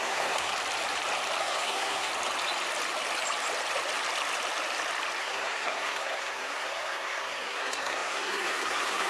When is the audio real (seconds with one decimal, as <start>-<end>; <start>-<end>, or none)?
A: 0.5-1.4; 2.1-5.2